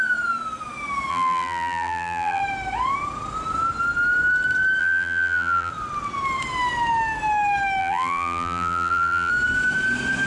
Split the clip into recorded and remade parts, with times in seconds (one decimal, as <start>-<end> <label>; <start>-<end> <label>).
0.0-1.1 recorded; 1.1-2.4 remade; 2.4-4.8 recorded; 4.8-5.7 remade; 5.7-7.8 recorded; 7.8-9.3 remade; 9.3-10.3 recorded